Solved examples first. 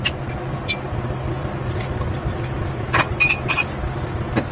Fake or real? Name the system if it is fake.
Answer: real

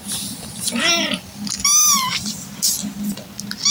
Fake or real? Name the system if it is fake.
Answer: real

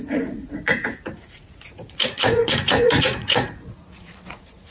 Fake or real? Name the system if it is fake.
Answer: fake, vocoder, Vocos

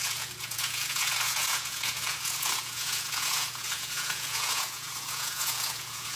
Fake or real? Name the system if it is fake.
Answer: fake, vocoder, Vocos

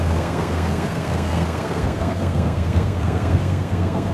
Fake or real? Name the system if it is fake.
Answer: fake, codec, SNAC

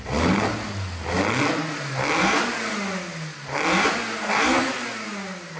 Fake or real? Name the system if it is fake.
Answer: real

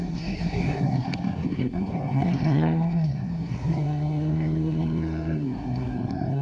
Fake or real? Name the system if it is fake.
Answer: fake, codec, SNAC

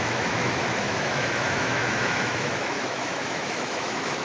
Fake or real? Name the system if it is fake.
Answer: fake, autoencoder, DAC-VAE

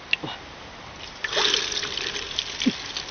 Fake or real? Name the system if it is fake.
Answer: real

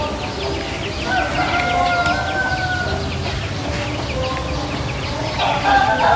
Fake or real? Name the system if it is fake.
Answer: real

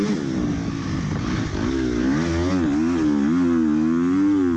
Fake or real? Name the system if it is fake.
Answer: real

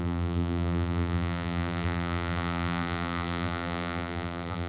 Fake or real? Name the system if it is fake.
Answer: fake, vocoder, BigVGAN v2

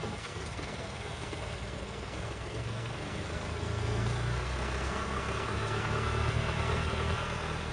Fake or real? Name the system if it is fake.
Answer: fake, codec, SNAC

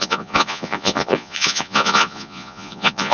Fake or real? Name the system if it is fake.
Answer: fake, vocoder, Vocos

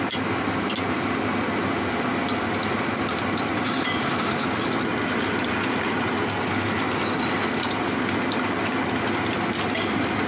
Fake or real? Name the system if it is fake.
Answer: real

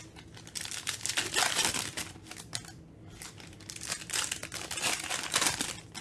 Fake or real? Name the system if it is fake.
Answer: real